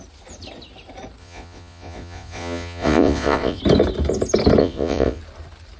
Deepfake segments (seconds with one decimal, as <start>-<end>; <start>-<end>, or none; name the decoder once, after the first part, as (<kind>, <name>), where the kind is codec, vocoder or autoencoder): 1.2-3.6 (vocoder, Vocos); 4.6-5.2